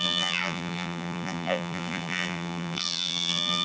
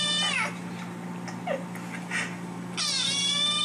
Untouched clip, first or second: second